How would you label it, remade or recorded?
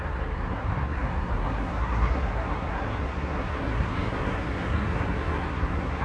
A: remade